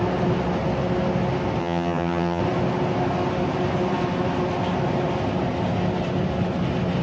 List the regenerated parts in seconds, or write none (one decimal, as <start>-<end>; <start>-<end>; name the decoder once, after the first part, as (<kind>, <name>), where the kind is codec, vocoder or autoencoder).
1.6-2.4 (vocoder, HiFi-GAN)